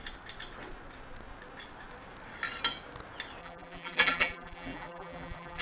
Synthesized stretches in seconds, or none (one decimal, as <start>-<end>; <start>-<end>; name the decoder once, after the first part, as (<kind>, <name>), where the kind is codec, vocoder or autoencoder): 3.4-5.6 (vocoder, BigVGAN v2)